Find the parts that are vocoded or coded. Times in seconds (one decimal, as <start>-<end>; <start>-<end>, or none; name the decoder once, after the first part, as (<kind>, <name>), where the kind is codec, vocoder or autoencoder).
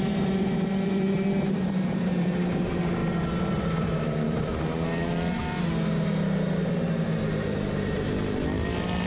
0.0-3.0 (vocoder, BigVGAN v2); 3.6-4.5